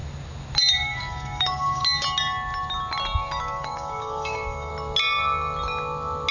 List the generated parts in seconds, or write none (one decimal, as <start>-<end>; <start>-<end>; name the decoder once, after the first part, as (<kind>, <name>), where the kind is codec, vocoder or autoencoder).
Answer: 0.7-1.8 (codec, DAC); 3.4-4.7